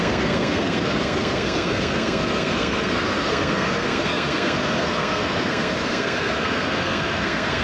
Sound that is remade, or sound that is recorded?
remade